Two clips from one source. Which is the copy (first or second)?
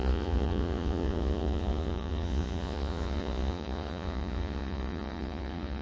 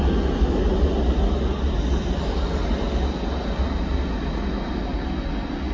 first